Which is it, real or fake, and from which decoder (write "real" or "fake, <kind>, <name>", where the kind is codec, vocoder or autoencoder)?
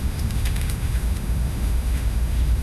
fake, autoencoder, DAC-VAE